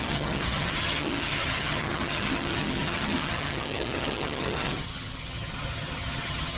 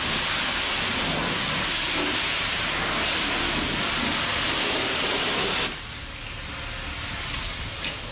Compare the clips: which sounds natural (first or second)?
second